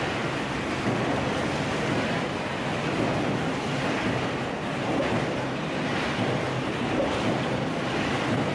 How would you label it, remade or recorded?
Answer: recorded